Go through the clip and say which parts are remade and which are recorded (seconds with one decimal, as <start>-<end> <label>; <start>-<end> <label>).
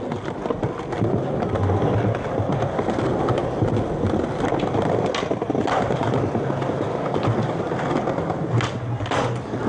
0.0-9.7 recorded